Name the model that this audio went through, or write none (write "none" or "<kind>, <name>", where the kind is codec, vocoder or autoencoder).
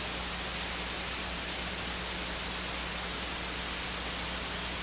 none